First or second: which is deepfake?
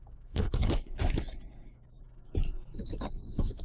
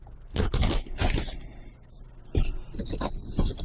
first